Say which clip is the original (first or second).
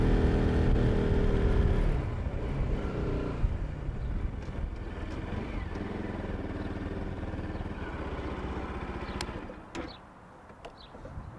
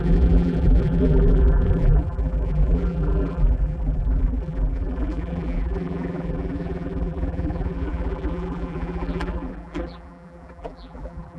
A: first